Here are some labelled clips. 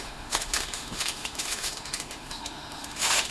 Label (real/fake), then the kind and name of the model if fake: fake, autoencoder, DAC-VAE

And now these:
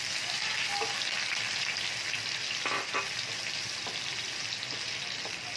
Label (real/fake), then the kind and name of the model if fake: real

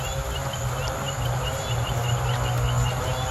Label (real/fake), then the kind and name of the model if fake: real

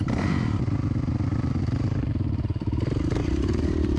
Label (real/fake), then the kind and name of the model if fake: fake, vocoder, BigVGAN v2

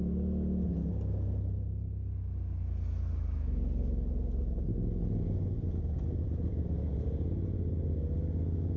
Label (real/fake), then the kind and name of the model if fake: real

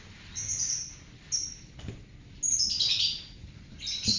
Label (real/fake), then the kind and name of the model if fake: real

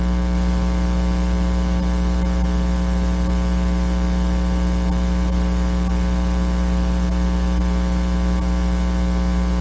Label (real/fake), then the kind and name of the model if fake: real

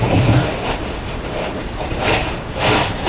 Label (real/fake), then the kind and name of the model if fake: real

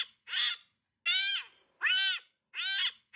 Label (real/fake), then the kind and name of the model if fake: real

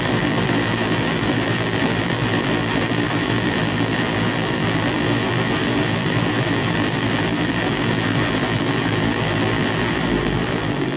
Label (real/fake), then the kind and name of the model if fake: fake, vocoder, BigVGAN v2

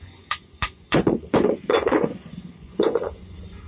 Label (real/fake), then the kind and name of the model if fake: fake, vocoder, Vocos